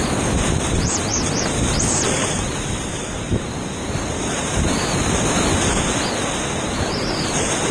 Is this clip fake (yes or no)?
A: no